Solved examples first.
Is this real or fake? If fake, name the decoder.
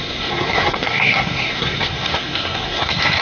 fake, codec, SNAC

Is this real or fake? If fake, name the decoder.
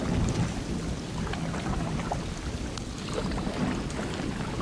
real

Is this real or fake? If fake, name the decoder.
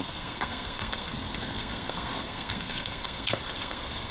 fake, codec, SNAC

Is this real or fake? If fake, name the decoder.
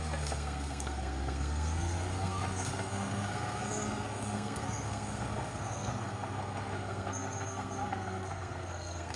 fake, codec, SNAC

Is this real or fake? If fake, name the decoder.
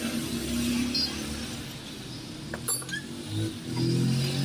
real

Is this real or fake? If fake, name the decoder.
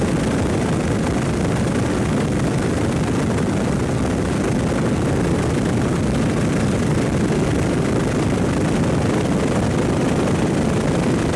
real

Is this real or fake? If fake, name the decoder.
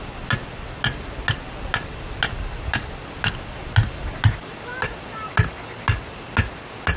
real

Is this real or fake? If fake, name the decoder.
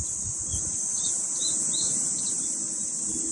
real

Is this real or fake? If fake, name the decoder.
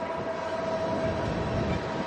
real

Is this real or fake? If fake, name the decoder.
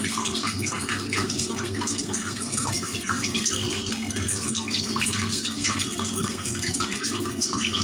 fake, codec, SNAC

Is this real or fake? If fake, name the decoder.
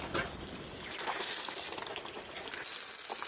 real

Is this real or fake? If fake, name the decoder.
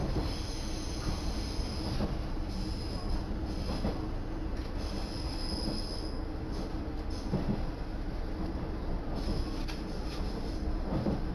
real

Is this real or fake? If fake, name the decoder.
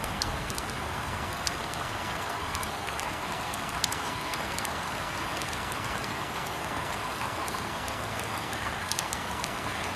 fake, codec, SNAC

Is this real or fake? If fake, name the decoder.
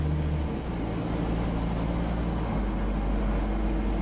real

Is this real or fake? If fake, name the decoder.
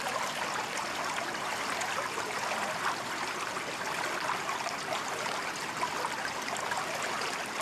real